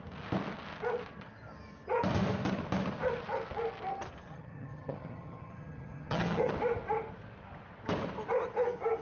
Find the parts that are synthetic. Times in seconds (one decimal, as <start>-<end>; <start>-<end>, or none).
4.3-6.5